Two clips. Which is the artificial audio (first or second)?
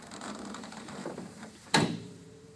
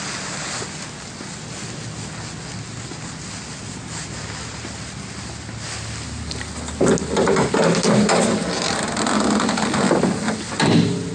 first